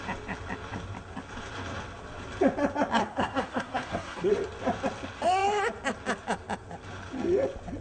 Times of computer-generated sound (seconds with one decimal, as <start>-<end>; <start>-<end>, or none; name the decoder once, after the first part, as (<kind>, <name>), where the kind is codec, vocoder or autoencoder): 3.0-4.3 (codec, SNAC)